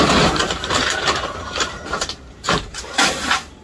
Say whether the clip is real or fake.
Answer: fake